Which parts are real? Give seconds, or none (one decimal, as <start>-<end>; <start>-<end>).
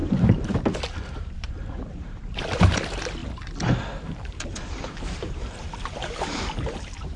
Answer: 3.2-4.2